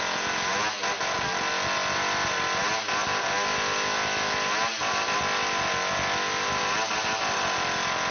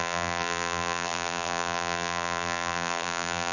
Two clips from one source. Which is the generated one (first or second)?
second